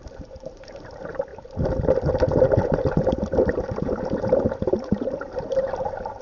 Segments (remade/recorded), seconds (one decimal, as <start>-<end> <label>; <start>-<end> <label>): 0.0-1.3 remade; 1.3-2.9 recorded; 2.9-6.2 remade